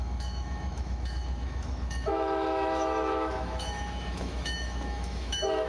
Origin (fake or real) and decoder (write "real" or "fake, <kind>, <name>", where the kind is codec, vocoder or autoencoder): fake, autoencoder, DAC-VAE